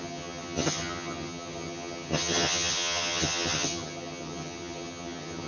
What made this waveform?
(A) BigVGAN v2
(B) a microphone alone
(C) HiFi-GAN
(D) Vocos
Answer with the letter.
C